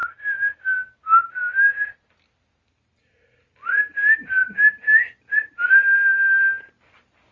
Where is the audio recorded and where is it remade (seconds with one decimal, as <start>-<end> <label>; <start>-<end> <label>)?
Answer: 0.0-7.3 recorded